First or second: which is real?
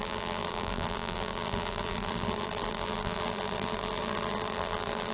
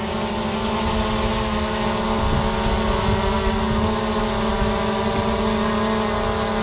second